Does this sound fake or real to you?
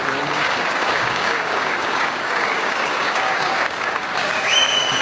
fake